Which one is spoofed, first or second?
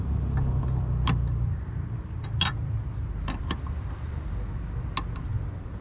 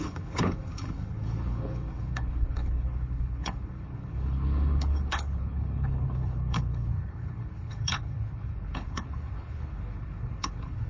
second